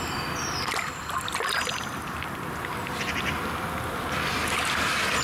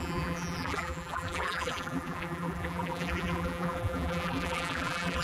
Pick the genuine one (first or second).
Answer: first